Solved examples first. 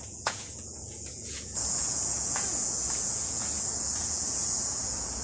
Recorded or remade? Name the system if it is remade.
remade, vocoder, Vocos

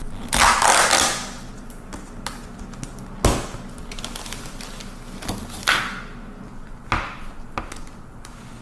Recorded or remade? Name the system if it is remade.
recorded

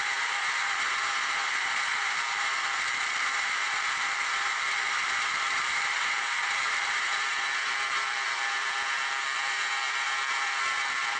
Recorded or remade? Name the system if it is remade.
remade, vocoder, BigVGAN v2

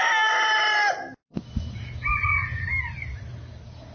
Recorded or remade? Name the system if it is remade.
recorded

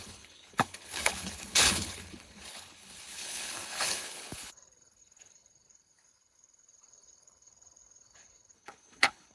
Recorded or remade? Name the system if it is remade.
remade, codec, HILCodec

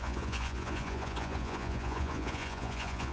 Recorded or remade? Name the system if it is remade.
remade, vocoder, Vocos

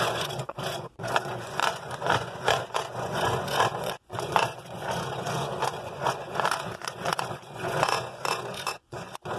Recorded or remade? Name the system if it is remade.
remade, vocoder, Vocos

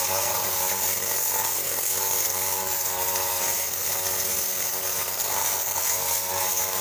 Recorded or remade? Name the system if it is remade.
remade, codec, SNAC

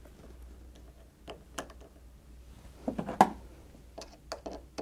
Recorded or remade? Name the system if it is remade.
recorded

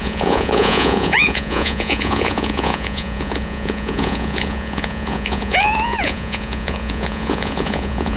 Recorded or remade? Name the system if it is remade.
remade, vocoder, Vocos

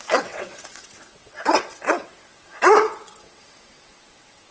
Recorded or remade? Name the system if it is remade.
remade, vocoder, WaveNeXt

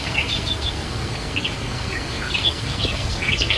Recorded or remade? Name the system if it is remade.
remade, codec, SNAC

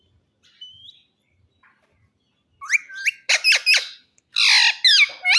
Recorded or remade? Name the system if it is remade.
recorded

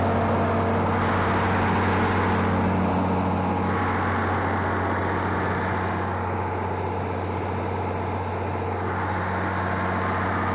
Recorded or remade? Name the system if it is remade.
recorded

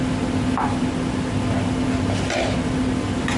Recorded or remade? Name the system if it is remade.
recorded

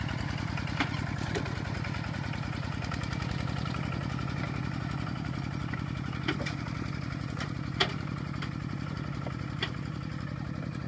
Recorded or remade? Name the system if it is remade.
remade, vocoder, BigVGAN v2